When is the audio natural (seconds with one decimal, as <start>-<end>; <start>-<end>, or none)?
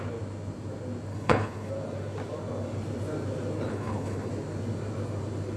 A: 0.0-1.1; 1.7-3.7; 4.3-5.6